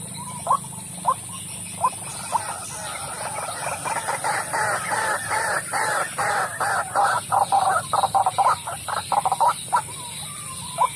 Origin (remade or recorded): recorded